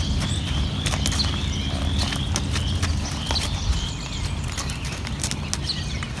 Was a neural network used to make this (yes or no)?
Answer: no